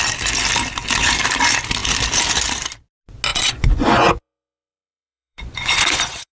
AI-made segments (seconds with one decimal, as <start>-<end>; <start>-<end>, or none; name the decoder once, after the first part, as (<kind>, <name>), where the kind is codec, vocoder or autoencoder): 3.3-6.3 (vocoder, Vocos)